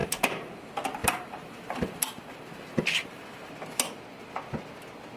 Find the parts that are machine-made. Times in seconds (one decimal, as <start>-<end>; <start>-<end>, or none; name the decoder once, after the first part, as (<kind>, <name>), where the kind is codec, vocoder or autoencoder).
0.0-0.5 (vocoder, BigVGAN v2); 1.0-3.5